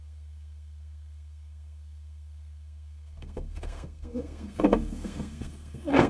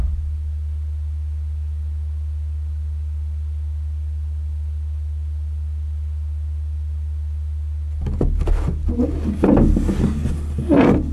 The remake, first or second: first